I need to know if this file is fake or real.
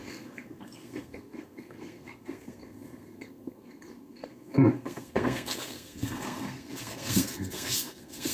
fake